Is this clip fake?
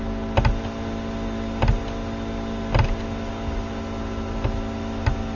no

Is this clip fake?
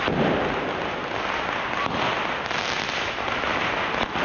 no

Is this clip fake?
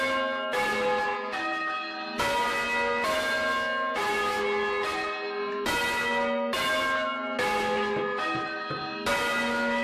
no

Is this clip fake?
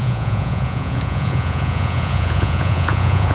yes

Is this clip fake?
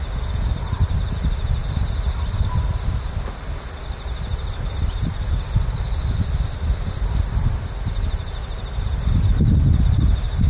no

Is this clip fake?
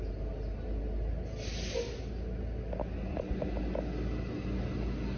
no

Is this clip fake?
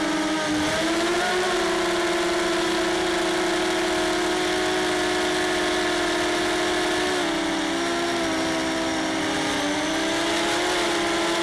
no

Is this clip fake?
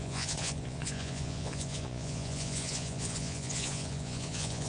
yes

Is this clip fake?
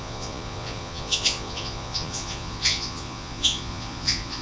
yes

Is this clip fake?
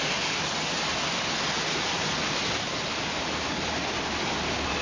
no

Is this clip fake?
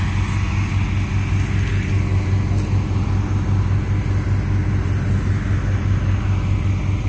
no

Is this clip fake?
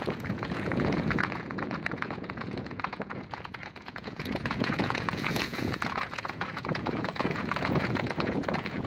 yes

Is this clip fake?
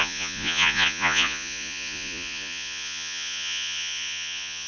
yes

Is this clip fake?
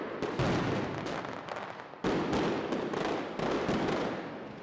no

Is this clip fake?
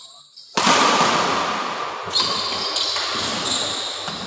no